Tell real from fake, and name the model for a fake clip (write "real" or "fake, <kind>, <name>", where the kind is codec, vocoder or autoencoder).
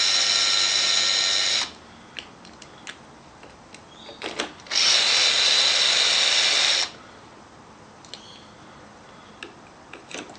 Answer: real